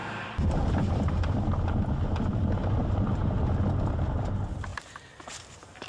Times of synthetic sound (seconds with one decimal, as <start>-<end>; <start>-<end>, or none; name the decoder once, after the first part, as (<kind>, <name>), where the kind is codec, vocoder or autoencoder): 0.0-1.4 (vocoder, BigVGAN v2); 2.8-3.4; 4.7-5.9